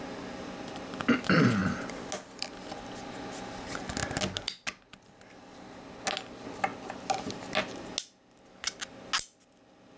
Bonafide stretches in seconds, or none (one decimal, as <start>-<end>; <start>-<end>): 0.0-10.0